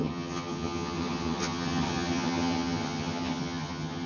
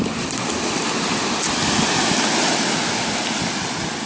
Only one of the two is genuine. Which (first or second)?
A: second